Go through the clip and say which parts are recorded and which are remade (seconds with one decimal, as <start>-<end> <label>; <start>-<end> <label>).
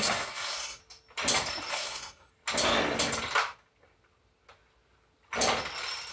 0.0-0.8 remade; 0.8-1.7 recorded; 1.7-2.3 remade; 2.3-6.1 recorded